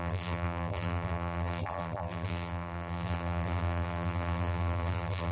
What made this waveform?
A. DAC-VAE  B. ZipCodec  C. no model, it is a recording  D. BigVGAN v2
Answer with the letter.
D